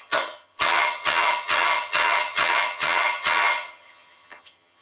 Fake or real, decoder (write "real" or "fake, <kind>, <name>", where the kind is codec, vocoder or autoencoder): fake, vocoder, HiFi-GAN